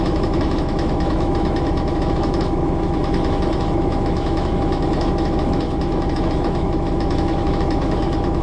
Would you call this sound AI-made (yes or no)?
yes